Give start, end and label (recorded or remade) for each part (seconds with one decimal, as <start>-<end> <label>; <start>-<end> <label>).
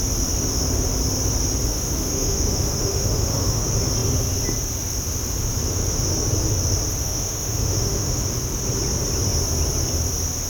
0.0-1.7 recorded; 1.7-3.6 remade; 3.6-7.0 recorded; 7.0-8.2 remade; 8.2-10.5 recorded